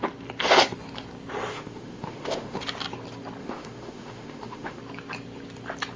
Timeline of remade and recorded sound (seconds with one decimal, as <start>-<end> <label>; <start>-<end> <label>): 0.0-1.5 recorded; 1.5-2.6 remade; 2.6-3.4 recorded; 3.4-4.8 remade; 4.8-6.0 recorded